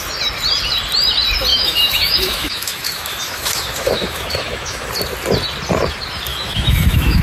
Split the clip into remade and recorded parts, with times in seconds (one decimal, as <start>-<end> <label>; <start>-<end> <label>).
0.0-1.5 recorded; 1.5-4.9 remade; 4.9-6.3 recorded; 6.3-7.2 remade